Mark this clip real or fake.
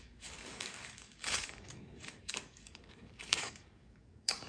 fake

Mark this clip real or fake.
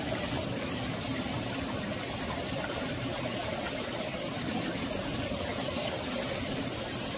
real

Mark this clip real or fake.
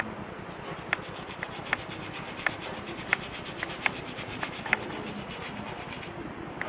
real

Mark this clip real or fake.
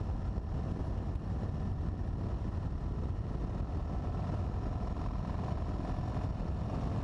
real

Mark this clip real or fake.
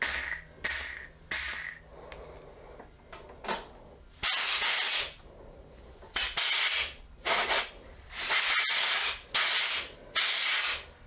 real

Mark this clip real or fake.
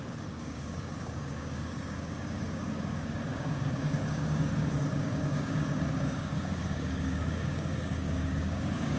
fake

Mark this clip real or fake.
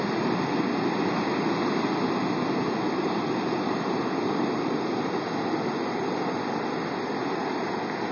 real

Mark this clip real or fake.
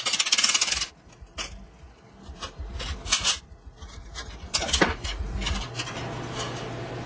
real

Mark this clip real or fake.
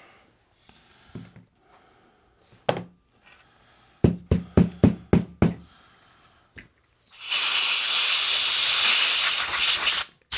real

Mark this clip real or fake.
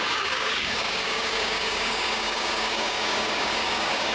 fake